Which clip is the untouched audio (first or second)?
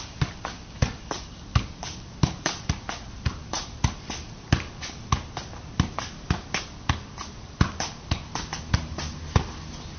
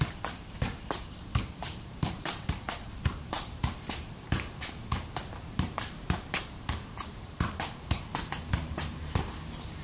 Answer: first